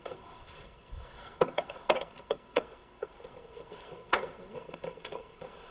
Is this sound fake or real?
fake